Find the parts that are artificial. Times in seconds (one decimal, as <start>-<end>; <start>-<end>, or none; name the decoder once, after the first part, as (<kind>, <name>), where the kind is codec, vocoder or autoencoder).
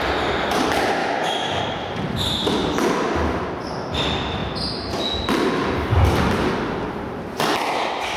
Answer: 1.0-1.6 (autoencoder, DAC-VAE)